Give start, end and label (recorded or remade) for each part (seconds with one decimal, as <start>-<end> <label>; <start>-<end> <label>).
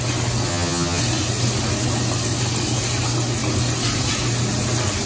0.0-0.5 recorded; 0.5-1.0 remade; 1.0-5.1 recorded